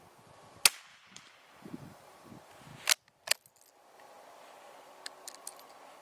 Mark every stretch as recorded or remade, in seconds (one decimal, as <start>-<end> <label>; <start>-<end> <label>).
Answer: 0.0-0.9 recorded; 0.9-2.3 remade; 2.3-6.0 recorded